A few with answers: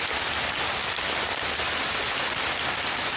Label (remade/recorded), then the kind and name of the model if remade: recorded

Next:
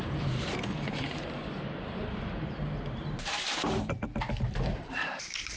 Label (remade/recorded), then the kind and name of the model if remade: remade, vocoder, BigVGAN v2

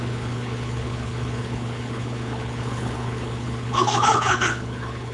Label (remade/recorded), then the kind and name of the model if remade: remade, codec, HILCodec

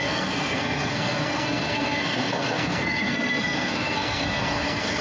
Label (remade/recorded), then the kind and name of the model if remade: remade, codec, SNAC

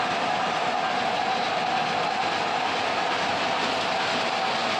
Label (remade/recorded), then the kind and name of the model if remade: recorded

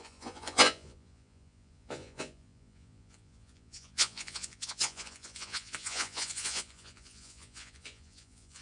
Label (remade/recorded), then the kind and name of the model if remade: remade, vocoder, Vocos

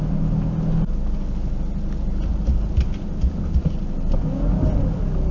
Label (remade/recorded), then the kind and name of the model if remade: recorded